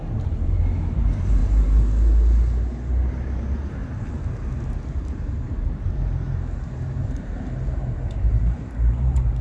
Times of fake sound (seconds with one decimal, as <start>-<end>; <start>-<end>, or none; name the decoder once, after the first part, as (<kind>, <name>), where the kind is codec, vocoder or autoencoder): 0.0-1.4 (vocoder, BigVGAN v2); 3.1-3.8; 5.0-9.4